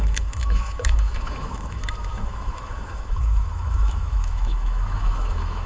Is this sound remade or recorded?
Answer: remade